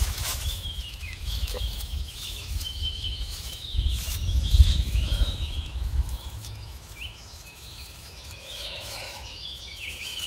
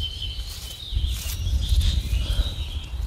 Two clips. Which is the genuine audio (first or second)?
second